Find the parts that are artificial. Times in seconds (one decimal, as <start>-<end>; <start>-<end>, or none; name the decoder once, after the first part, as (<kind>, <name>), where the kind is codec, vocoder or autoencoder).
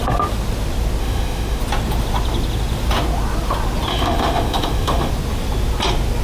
1.0-1.6 (autoencoder, DAC-VAE); 3.9-5.1